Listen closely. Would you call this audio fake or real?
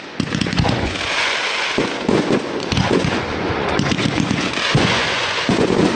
fake